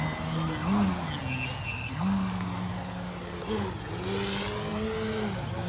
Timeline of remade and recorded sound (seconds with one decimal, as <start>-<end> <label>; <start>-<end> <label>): 0.0-5.7 recorded